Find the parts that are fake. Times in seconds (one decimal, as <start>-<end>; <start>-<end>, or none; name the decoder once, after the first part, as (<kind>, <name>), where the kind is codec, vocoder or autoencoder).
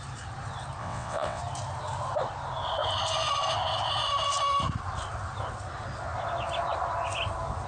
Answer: 0.8-1.4 (vocoder, WaveNeXt)